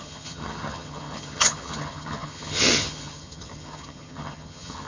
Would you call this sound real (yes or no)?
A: no